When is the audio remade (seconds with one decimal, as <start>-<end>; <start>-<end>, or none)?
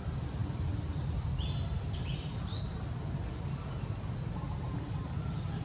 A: none